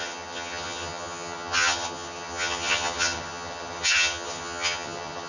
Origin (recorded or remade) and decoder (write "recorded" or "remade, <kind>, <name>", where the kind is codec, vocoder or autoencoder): remade, vocoder, HiFi-GAN